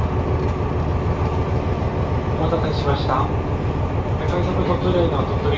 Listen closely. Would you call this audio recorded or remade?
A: recorded